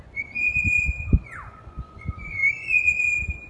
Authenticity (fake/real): fake